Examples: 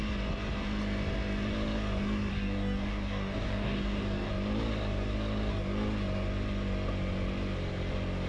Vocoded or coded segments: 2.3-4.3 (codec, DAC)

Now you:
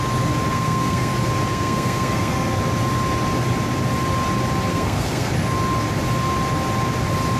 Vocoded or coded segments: 0.5-1.1 (codec, SNAC); 1.5-2.6; 4.7-5.3

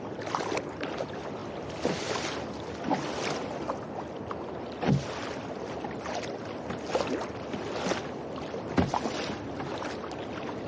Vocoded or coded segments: none